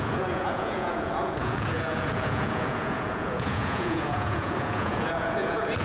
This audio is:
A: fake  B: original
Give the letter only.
A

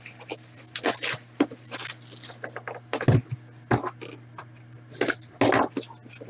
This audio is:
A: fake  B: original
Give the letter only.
B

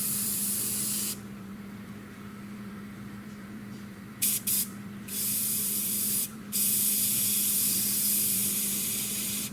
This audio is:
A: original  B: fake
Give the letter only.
B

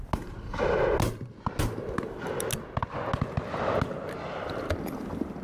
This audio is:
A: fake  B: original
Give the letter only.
B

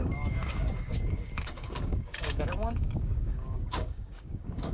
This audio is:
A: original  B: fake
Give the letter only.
B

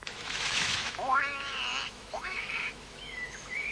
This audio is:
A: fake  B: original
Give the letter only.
A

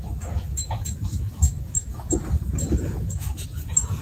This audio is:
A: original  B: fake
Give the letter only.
B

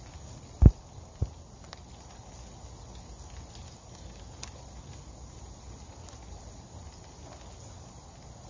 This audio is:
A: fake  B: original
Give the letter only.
B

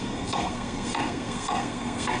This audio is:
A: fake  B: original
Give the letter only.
A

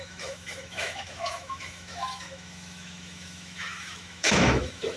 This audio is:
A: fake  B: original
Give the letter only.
A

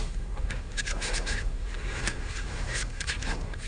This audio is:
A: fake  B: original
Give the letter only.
A